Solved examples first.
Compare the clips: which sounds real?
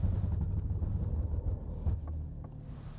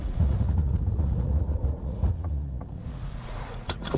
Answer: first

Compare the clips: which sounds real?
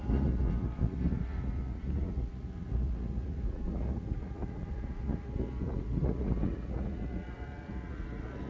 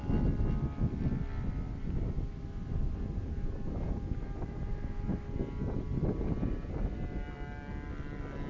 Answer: second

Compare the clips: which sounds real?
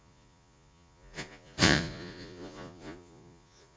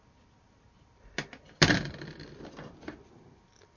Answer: second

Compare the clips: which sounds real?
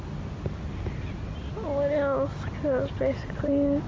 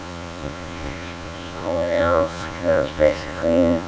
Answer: first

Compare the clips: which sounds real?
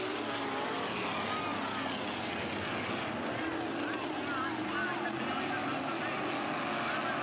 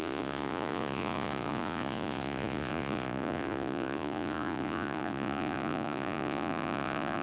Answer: first